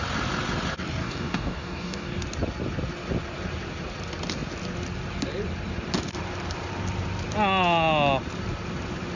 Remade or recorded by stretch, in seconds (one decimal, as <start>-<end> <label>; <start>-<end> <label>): 0.0-1.0 recorded; 1.0-2.2 remade; 2.2-9.2 recorded